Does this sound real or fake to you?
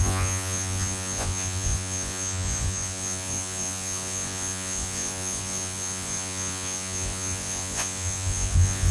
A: fake